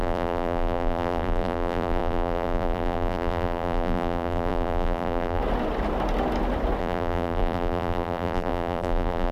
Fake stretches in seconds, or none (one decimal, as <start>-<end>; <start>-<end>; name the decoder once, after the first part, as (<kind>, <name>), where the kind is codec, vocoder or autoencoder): 0.0-5.4 (vocoder, BigVGAN v2); 6.8-9.3